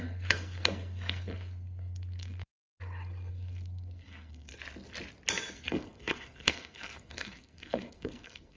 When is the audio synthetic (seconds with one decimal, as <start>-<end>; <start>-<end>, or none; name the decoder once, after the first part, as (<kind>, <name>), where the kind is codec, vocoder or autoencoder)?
0.0-2.5 (codec, SNAC); 3.3-4.5; 5.5-8.6